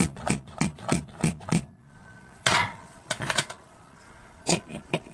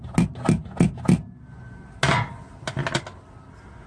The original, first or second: second